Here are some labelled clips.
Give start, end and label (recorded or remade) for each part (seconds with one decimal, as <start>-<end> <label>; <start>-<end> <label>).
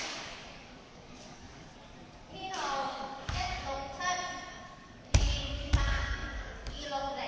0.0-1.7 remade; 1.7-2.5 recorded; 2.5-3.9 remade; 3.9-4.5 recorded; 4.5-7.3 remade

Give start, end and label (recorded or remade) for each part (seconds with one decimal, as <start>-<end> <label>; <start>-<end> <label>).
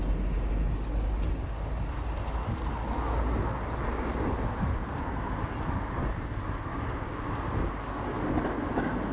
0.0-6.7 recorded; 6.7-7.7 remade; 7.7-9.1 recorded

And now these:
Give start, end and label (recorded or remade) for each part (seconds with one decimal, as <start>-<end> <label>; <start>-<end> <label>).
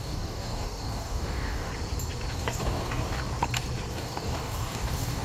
0.0-1.7 remade; 1.7-2.3 recorded; 2.3-3.2 remade; 3.2-3.9 recorded; 3.9-5.2 remade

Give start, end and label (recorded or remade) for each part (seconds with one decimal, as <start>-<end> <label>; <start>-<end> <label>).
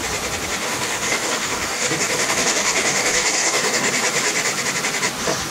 0.0-0.6 recorded; 0.6-3.9 remade; 3.9-5.5 recorded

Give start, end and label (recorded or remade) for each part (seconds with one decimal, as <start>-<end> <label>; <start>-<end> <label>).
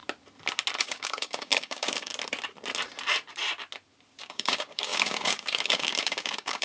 0.0-0.8 recorded; 0.8-2.1 remade; 2.1-4.2 recorded; 4.2-6.6 remade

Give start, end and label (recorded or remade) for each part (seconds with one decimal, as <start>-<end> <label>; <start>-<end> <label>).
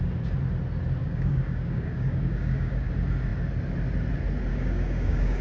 0.0-1.0 recorded; 1.0-2.9 remade; 2.9-4.5 recorded; 4.5-5.4 remade